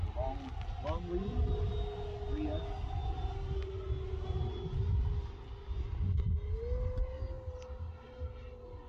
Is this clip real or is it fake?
real